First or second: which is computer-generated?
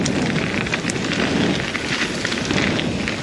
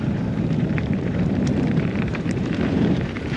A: second